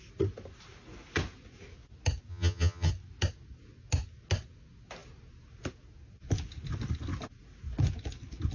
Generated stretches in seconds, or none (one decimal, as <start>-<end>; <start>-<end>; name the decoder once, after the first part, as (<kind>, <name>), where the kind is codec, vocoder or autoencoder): 2.3-2.9 (vocoder, HiFi-GAN)